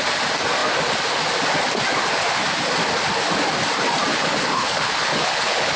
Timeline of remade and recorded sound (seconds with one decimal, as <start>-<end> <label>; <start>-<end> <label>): 0.0-4.1 recorded; 4.1-5.8 remade